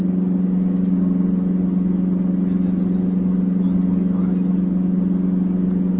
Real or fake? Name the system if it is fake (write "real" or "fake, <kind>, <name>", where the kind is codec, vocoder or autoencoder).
real